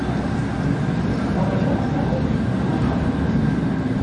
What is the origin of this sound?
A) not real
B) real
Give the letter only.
B